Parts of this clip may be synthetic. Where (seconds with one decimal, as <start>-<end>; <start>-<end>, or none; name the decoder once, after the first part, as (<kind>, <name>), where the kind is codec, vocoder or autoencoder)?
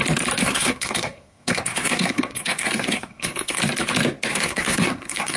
0.4-3.6 (codec, SNAC); 4.3-5.4